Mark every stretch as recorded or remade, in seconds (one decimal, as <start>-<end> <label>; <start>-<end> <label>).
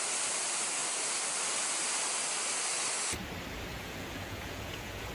0.0-3.7 recorded; 3.7-5.1 remade